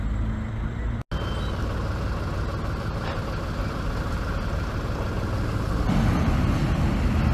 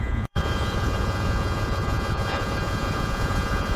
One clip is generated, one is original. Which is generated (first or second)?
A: second